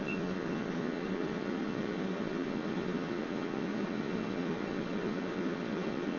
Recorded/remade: remade